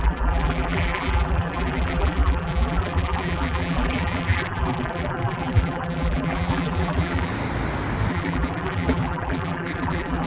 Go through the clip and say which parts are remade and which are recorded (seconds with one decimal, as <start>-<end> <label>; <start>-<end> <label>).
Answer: 0.0-7.3 remade; 7.3-8.1 recorded; 8.1-10.3 remade